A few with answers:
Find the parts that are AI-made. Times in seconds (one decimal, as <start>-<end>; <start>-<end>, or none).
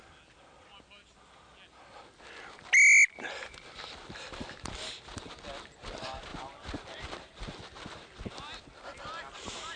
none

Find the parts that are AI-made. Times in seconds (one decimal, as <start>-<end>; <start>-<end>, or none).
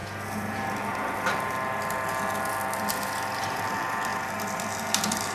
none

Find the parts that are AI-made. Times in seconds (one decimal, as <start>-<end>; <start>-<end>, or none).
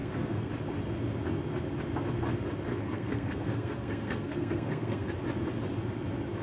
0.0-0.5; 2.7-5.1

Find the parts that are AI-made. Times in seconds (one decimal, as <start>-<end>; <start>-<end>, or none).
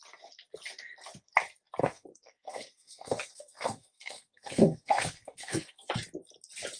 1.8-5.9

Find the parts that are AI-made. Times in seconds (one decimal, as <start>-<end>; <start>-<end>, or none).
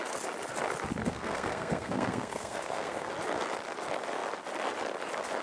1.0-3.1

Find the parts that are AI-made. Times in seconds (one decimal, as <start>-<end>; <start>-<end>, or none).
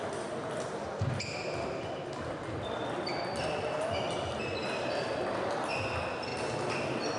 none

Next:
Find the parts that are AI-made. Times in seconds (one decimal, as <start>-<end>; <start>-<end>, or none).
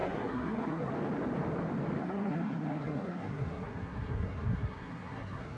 0.0-0.9; 2.0-5.6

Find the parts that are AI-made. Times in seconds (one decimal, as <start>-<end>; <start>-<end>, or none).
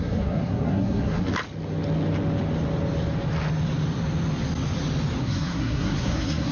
0.0-1.3; 5.2-6.5